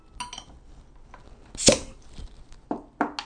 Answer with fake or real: real